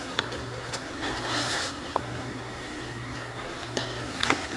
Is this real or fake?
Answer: fake